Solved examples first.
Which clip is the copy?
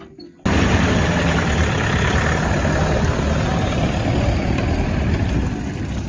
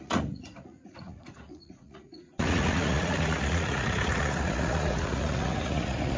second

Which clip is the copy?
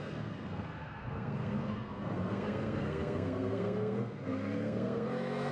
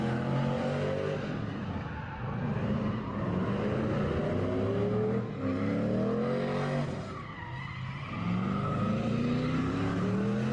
first